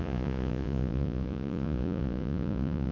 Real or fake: fake